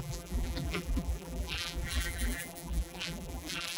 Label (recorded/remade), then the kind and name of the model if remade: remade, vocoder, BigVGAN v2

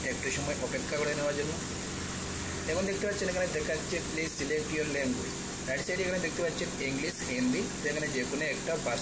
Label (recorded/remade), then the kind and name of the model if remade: recorded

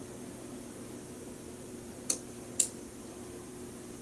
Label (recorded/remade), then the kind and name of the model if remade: remade, vocoder, BigVGAN v2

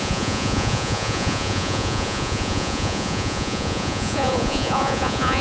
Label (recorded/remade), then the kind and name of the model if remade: remade, vocoder, Vocos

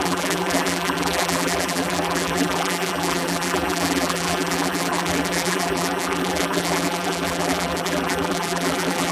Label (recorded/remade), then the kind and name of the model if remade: remade, vocoder, BigVGAN v2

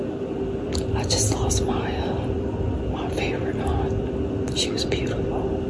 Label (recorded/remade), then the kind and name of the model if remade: recorded